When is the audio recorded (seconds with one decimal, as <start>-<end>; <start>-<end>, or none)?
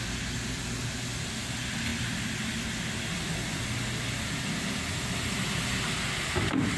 0.0-6.8